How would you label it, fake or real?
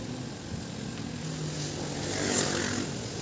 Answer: real